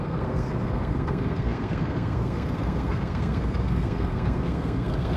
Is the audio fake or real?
fake